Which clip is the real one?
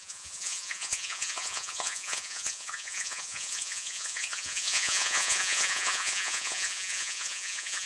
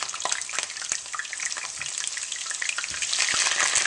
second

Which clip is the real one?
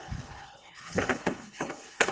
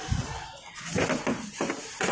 second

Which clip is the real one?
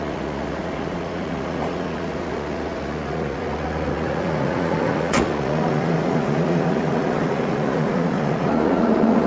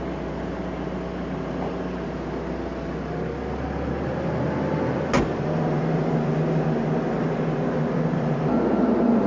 second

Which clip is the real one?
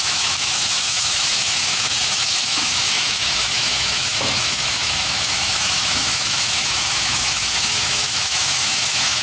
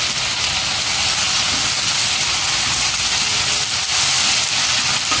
second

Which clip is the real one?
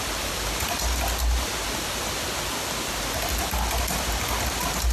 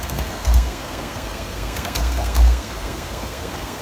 first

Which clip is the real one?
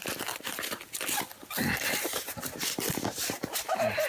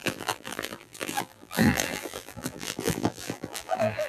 first